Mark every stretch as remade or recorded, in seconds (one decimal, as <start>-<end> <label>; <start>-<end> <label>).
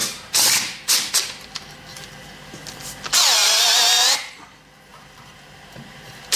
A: 0.0-1.1 remade; 1.1-1.9 recorded; 1.9-2.8 remade; 2.8-4.9 recorded; 4.9-6.4 remade